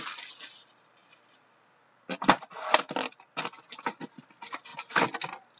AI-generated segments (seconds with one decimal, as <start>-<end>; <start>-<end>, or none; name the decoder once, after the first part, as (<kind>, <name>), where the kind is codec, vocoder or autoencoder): 1.0-4.2 (vocoder, BigVGAN v2); 4.7-5.6